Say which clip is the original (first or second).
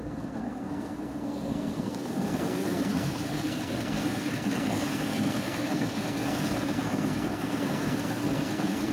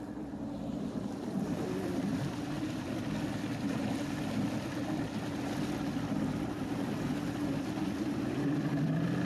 second